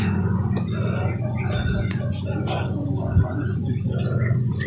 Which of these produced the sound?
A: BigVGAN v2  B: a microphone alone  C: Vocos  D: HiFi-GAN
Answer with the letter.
C